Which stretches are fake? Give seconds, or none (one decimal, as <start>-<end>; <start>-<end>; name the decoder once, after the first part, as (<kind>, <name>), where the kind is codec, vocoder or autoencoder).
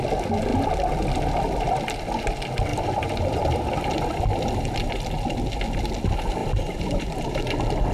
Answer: 2.7-3.8 (vocoder, BigVGAN v2); 6.4-7.5